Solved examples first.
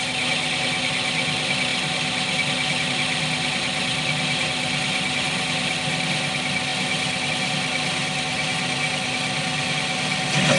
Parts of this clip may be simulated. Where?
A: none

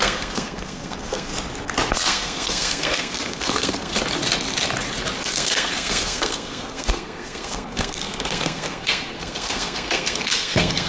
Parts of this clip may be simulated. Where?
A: 0.0-1.3; 1.9-3.9; 5.2-10.9